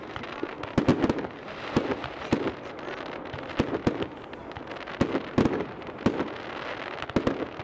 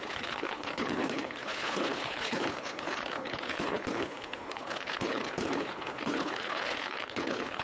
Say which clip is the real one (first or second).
first